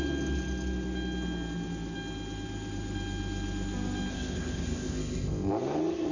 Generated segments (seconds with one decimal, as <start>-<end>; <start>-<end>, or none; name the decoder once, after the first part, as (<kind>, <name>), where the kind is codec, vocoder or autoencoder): 4.1-5.5 (codec, ZipCodec)